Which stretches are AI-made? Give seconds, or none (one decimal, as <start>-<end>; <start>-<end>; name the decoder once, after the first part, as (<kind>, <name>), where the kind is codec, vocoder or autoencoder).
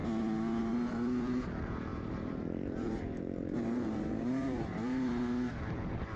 0.6-6.2 (vocoder, BigVGAN v2)